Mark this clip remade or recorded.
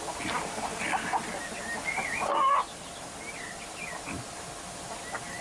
recorded